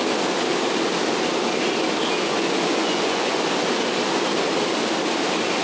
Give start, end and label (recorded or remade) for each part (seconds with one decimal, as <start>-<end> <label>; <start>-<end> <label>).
0.0-2.2 recorded; 2.2-3.4 remade; 3.4-5.6 recorded